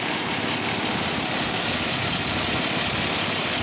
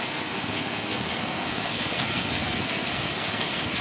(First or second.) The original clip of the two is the first